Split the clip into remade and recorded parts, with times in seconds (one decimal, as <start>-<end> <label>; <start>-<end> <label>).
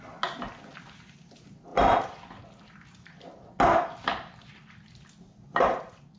0.0-6.2 recorded